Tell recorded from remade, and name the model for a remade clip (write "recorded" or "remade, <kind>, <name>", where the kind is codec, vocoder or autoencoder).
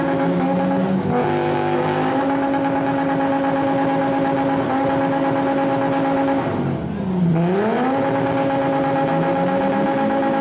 recorded